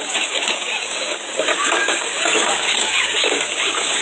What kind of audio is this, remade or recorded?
remade